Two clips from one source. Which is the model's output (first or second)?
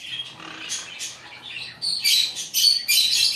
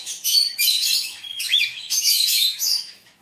second